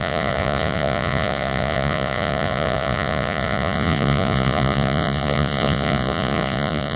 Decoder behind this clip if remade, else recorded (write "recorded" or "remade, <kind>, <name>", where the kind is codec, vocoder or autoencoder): remade, vocoder, Vocos